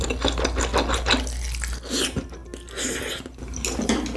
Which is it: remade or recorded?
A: recorded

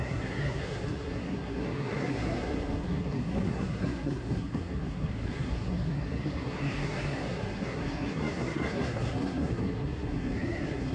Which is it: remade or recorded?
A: remade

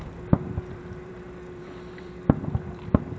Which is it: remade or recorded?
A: remade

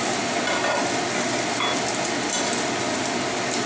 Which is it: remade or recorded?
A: recorded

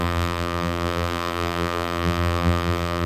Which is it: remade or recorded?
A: remade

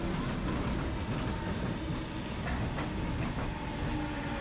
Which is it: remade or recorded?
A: recorded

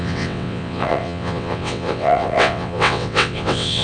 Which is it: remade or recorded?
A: remade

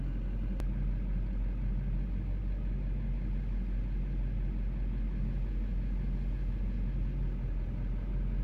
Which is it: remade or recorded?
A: recorded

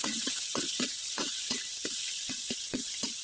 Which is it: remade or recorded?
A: remade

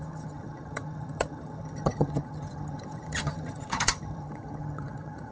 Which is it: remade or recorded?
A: remade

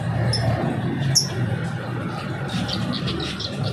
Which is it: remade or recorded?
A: recorded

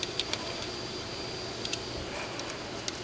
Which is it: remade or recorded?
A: recorded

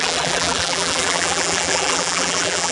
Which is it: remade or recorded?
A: remade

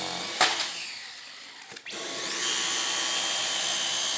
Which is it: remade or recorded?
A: recorded